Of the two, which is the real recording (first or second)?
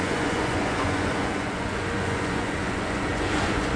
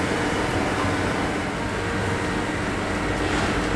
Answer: second